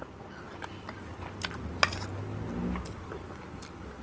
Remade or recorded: recorded